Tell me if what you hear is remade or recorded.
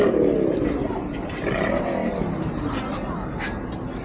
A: remade